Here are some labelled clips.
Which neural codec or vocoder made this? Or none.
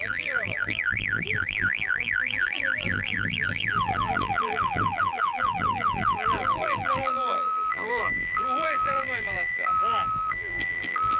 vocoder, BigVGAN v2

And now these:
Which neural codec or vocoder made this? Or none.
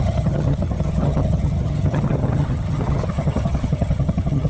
vocoder, HiFi-GAN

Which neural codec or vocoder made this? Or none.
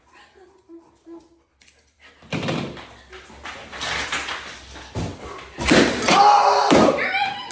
none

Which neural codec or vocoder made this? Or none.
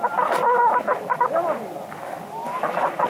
none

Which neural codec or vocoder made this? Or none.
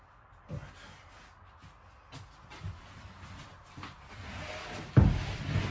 none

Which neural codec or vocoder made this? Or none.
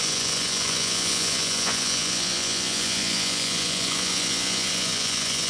vocoder, Vocos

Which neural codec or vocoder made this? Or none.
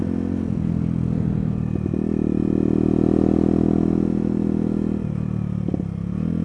none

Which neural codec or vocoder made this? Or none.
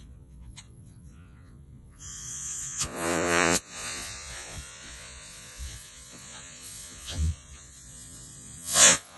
vocoder, Vocos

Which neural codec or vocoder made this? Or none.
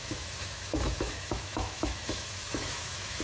autoencoder, DAC-VAE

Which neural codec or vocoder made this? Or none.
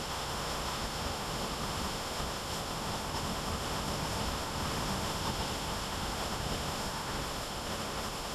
autoencoder, DAC-VAE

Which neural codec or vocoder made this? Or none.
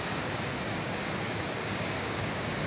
codec, DAC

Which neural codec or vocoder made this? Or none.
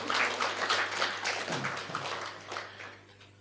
none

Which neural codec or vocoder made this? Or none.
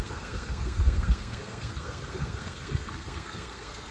codec, SNAC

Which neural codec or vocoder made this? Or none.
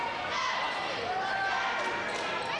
none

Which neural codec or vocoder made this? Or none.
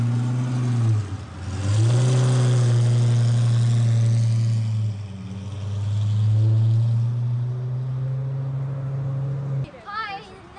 none